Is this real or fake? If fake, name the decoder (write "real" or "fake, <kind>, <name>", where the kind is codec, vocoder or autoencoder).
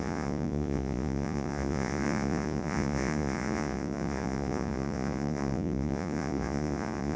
fake, vocoder, Vocos